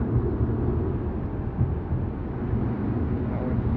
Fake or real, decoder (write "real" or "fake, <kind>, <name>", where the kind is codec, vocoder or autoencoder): real